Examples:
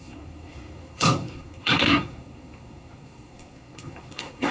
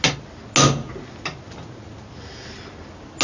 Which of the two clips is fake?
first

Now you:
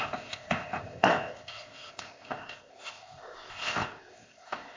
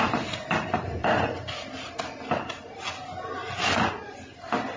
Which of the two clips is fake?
first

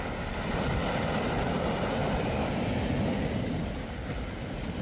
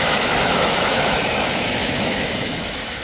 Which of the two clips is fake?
second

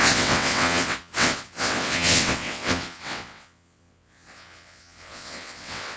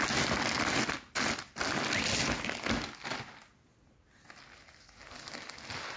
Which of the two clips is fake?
first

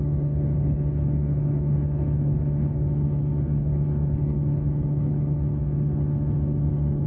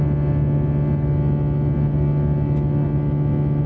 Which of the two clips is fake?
first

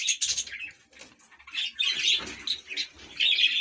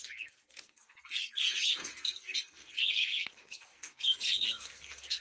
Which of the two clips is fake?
second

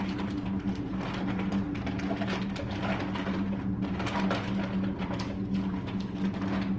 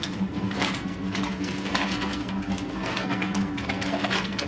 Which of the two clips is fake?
second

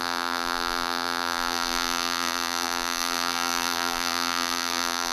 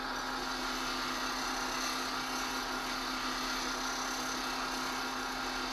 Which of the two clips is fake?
first